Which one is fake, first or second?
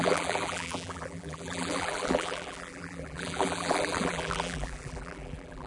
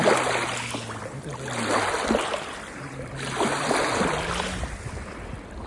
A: first